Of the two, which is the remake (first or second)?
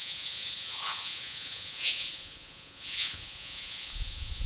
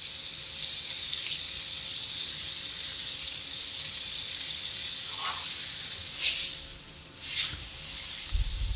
first